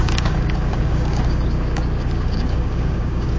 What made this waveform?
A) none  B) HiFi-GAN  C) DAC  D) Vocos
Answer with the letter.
C